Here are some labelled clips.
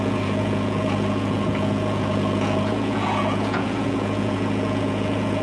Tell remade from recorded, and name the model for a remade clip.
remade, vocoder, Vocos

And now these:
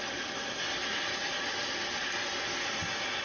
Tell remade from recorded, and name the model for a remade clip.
recorded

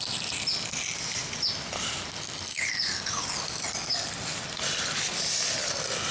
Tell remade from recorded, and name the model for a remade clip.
recorded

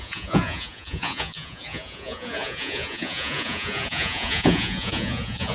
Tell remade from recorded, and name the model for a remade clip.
remade, vocoder, Vocos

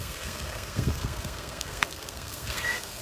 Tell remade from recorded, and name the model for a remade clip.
remade, codec, SNAC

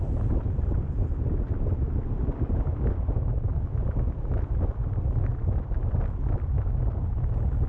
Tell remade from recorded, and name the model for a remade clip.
recorded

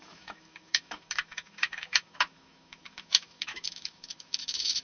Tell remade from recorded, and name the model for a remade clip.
remade, autoencoder, DAC-VAE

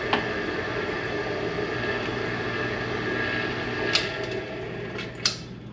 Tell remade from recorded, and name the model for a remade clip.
recorded